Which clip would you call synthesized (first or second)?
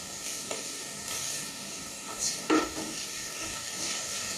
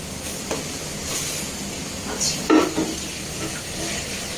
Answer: first